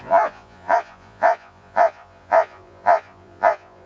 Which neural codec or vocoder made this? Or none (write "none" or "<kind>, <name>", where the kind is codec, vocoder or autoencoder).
vocoder, Vocos